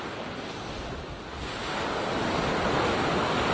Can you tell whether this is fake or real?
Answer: real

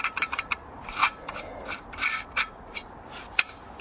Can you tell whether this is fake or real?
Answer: fake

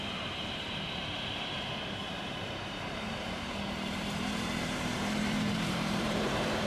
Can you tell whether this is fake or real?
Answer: fake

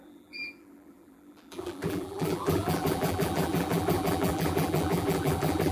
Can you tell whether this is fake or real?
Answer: fake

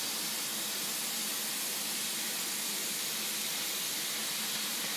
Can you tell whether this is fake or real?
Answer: real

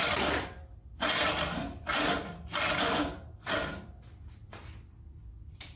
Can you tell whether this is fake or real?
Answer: fake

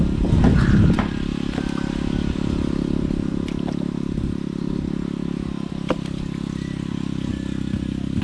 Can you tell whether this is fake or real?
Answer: real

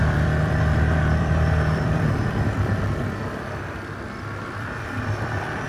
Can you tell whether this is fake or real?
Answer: fake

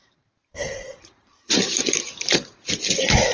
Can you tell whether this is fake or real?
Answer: fake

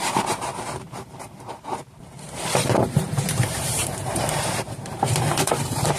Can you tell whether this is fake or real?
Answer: fake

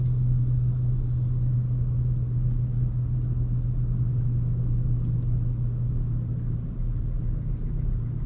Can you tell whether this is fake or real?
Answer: real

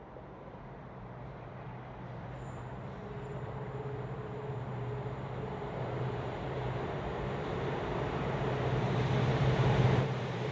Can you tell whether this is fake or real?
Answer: fake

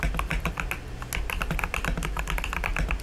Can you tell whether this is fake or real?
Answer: real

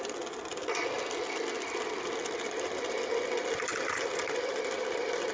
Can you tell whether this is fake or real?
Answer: real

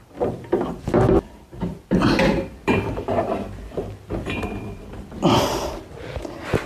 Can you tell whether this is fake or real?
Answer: fake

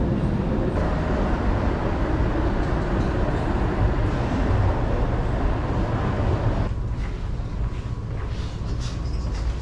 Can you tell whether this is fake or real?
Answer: real